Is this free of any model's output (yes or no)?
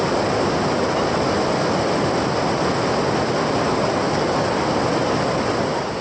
yes